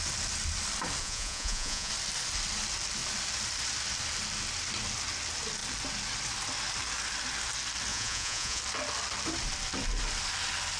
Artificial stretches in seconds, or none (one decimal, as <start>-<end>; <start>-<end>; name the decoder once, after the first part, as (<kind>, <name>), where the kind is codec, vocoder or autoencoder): 1.0-1.9 (vocoder, Vocos); 7.9-8.6